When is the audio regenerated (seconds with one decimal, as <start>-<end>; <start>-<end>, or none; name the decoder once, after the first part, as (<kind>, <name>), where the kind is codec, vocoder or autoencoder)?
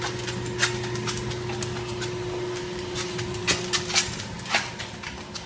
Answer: none